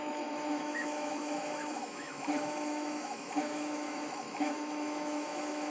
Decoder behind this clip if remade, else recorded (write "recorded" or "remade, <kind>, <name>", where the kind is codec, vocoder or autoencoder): remade, autoencoder, DAC-VAE